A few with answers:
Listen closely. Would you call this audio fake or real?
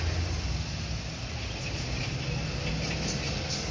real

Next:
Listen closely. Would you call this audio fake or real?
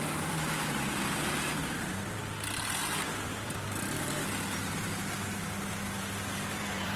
fake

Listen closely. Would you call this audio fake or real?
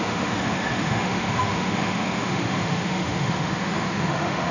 fake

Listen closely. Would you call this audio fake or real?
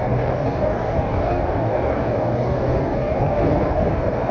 fake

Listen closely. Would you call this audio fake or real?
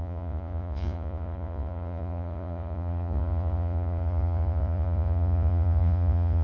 fake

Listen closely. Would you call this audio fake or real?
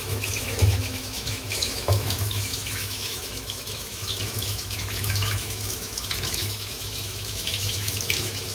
fake